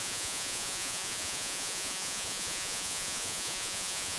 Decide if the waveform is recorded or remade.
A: remade